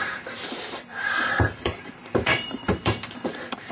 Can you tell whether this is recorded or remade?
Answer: remade